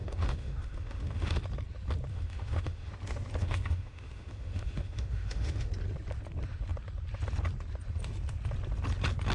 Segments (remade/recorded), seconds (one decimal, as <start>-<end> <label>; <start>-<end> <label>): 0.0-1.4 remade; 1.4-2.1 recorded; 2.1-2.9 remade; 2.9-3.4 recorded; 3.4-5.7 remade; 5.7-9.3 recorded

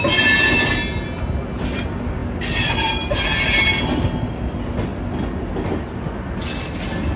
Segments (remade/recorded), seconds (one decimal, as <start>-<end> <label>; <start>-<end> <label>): 0.0-7.2 recorded

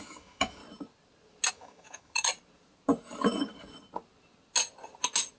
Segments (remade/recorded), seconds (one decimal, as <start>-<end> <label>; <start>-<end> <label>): 0.0-0.6 remade; 0.6-1.5 recorded; 1.5-2.3 remade; 2.3-5.4 recorded

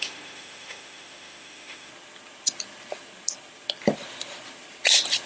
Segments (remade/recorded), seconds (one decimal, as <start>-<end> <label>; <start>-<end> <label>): 0.0-1.9 remade; 1.9-5.3 recorded

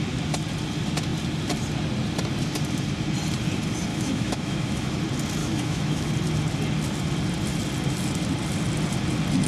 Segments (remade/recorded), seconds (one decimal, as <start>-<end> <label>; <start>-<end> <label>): 0.0-3.9 recorded; 3.9-5.0 remade; 5.0-5.4 recorded; 5.4-6.1 remade; 6.1-9.5 recorded

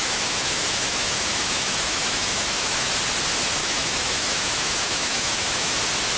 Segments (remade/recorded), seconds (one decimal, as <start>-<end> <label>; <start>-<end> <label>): 0.0-2.9 remade; 2.9-3.6 recorded; 3.6-5.7 remade; 5.7-6.2 recorded

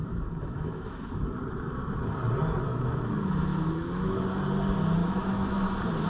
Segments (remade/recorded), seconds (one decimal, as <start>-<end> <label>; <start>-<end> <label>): 0.0-1.1 remade; 1.1-2.7 recorded; 2.7-4.1 remade; 4.1-5.0 recorded; 5.0-5.6 remade; 5.6-6.1 recorded